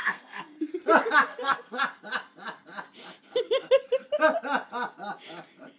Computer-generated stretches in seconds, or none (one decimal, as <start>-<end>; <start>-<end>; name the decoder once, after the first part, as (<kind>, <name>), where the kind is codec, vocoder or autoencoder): 0.0-0.7 (codec, SNAC); 1.3-1.8